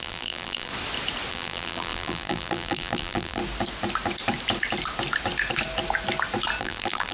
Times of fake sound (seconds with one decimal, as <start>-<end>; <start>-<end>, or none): 0.0-0.7; 1.3-3.4; 6.6-7.1